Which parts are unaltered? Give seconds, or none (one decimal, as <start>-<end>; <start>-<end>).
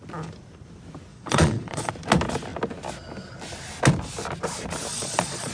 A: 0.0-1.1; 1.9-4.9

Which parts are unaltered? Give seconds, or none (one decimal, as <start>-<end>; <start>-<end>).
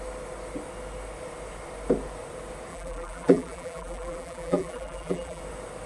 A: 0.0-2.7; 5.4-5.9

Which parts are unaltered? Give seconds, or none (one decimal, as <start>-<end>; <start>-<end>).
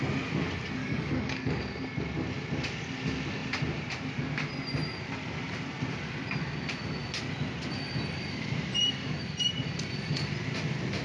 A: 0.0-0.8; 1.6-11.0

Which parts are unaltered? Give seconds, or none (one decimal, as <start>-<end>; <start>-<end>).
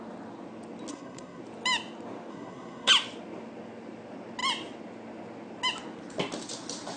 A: 0.0-0.9; 1.4-2.3; 2.9-7.0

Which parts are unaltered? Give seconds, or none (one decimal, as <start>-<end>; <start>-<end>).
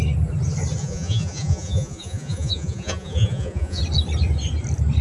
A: 0.0-0.8; 3.8-5.0